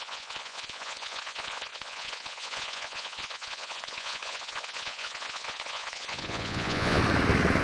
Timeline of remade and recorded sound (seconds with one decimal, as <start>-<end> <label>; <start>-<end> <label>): 0.0-7.0 remade; 7.0-7.6 recorded